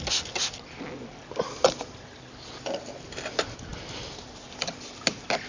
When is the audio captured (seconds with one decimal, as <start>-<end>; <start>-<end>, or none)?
0.0-5.5

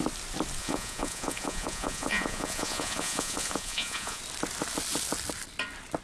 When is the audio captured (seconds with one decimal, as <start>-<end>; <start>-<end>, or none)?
0.0-0.6; 4.2-6.0

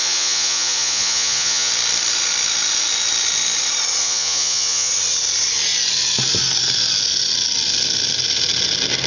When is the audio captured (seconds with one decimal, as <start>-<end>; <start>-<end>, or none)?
1.7-4.0; 4.9-9.1

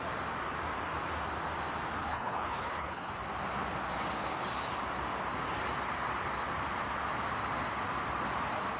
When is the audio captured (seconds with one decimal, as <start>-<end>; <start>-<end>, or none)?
0.0-2.0; 3.1-8.8

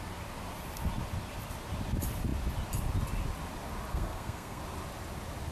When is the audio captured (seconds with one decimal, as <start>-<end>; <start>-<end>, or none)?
0.0-3.9; 4.6-5.5

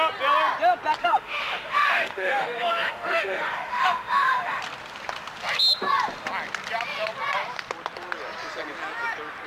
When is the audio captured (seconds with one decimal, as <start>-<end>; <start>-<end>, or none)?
0.0-1.0; 4.6-9.5

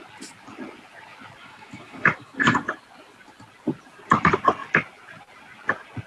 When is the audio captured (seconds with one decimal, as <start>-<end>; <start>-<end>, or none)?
0.0-1.4; 2.6-6.1

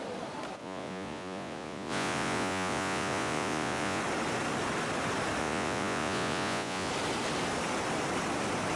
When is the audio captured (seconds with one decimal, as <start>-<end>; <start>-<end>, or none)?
0.0-0.6; 4.0-5.4; 6.9-8.8